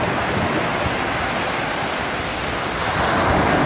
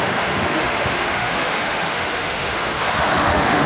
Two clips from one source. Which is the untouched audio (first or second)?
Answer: first